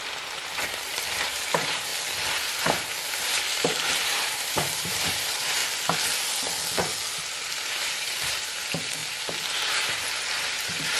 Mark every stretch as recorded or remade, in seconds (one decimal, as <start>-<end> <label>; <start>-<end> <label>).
0.0-1.9 remade; 1.9-2.5 recorded; 2.5-5.6 remade; 5.6-7.1 recorded; 7.1-9.0 remade; 9.0-9.7 recorded; 9.7-11.0 remade